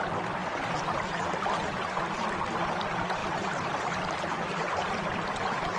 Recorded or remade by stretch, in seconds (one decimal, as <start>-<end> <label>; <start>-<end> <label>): 0.0-5.8 remade